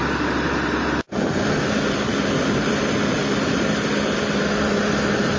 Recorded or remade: recorded